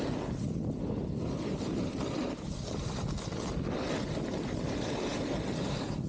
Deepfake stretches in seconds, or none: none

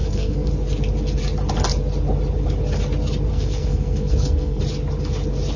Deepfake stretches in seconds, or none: 0.0-0.5; 3.3-4.6

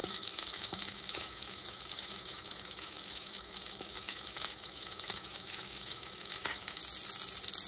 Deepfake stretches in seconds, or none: 0.0-6.8

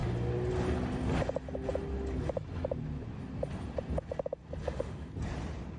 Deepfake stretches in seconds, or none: 4.6-5.1